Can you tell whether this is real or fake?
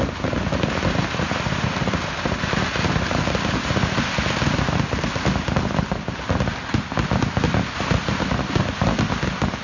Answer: real